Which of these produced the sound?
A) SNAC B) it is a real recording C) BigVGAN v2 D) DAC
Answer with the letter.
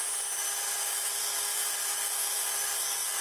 B